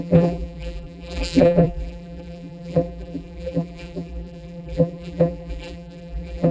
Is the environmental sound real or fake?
fake